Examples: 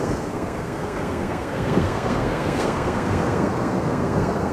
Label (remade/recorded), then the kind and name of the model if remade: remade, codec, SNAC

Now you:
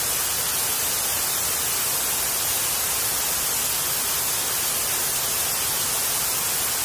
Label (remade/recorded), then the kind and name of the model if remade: recorded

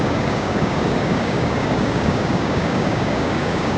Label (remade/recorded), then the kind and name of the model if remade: remade, codec, DAC